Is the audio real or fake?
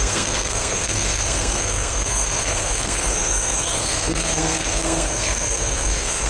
fake